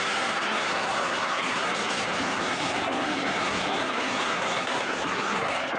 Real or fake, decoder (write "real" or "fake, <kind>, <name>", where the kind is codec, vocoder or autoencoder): fake, codec, SNAC